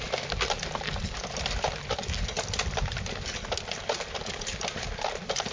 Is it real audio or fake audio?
real